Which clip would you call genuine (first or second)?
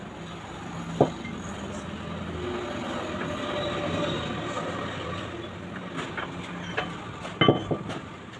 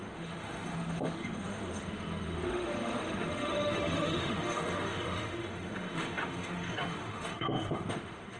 first